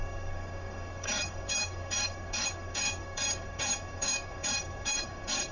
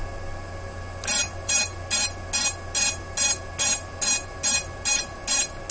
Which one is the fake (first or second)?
first